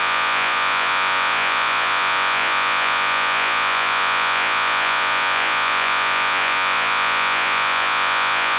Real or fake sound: fake